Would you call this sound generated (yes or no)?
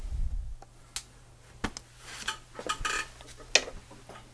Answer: no